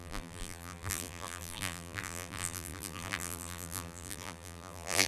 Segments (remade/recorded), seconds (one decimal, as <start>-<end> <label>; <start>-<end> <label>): 0.0-5.1 remade